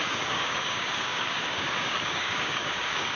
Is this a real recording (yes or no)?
no